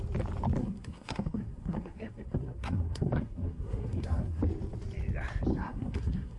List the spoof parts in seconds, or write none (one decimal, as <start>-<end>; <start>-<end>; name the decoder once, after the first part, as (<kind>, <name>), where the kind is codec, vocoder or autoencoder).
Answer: 0.6-4.4 (codec, SNAC); 5.5-6.4